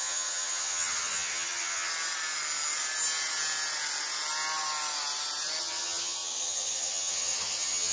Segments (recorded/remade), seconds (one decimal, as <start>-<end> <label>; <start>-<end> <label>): 0.0-1.9 remade; 1.9-5.6 recorded; 5.6-7.9 remade